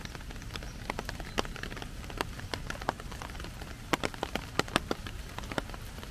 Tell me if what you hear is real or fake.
real